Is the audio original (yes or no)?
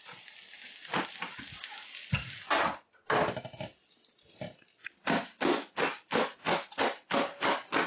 yes